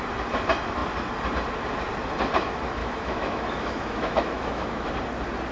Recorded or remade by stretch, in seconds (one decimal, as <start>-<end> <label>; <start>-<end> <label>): 0.0-2.8 recorded; 2.8-4.9 remade; 4.9-5.5 recorded